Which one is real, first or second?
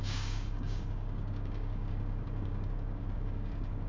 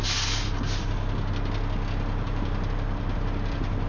second